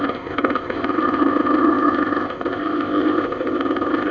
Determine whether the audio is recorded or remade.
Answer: remade